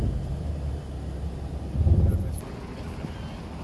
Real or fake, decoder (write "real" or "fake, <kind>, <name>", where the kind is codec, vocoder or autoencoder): real